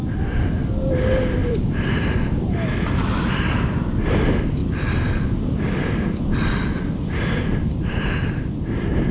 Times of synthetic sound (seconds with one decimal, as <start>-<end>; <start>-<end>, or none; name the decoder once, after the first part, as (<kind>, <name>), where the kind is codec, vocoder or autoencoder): 1.4-2.4 (vocoder, BigVGAN v2); 4.6-8.6